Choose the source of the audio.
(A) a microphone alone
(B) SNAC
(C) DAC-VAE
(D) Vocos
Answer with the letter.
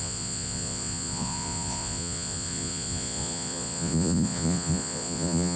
D